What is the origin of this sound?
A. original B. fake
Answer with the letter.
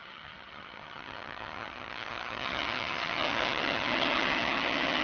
B